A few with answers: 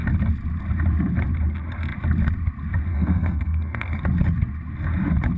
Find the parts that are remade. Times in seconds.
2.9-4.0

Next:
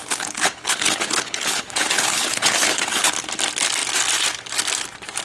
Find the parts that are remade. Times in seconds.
0.0-3.1

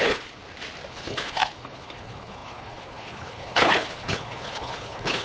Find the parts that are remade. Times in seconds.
0.0-0.4; 0.9-5.2

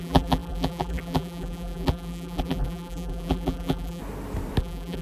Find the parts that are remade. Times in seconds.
0.0-4.0; 4.6-5.0

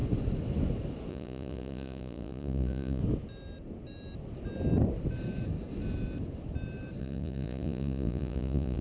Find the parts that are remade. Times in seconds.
1.1-3.0; 7.0-8.8

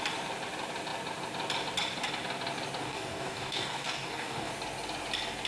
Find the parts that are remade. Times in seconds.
2.8-4.5

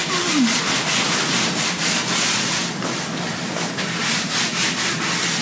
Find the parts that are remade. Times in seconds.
none

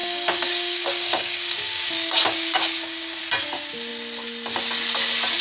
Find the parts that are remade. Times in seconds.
0.0-3.2